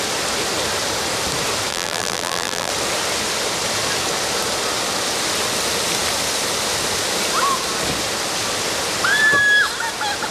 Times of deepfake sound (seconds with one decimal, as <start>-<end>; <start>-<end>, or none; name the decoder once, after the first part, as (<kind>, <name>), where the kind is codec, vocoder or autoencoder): 1.7-2.7 (vocoder, BigVGAN v2)